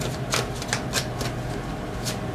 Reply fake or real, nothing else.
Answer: real